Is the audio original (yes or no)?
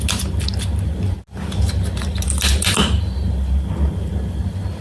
yes